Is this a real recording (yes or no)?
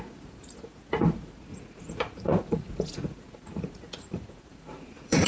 no